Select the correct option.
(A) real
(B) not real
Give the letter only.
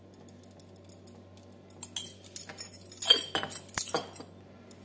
A